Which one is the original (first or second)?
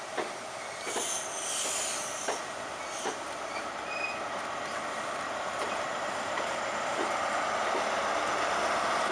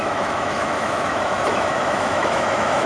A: first